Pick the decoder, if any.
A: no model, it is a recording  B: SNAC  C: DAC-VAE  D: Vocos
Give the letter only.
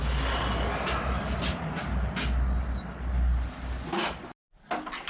A